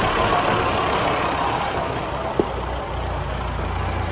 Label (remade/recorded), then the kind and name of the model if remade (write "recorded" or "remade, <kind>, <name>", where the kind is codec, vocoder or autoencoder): recorded